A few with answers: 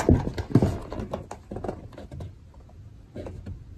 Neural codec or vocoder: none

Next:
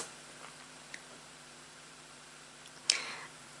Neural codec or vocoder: vocoder, BigVGAN v2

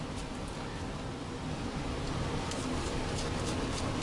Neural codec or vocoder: none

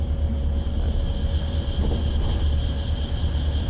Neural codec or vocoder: none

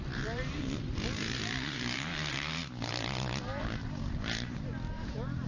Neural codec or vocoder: vocoder, BigVGAN v2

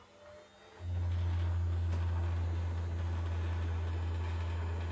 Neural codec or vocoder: none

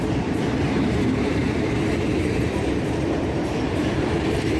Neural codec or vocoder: vocoder, BigVGAN v2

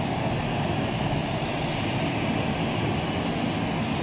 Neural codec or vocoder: none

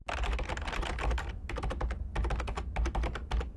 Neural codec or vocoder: none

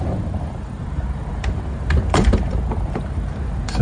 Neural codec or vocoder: vocoder, BigVGAN v2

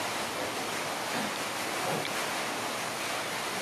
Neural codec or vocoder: vocoder, BigVGAN v2